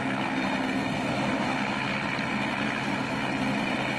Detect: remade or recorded recorded